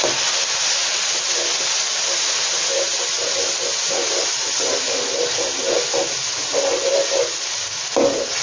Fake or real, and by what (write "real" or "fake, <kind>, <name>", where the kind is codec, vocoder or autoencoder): real